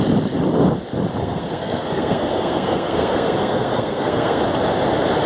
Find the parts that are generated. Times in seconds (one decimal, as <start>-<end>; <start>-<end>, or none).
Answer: 1.2-4.4